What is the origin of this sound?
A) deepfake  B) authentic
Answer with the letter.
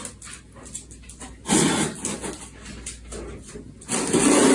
B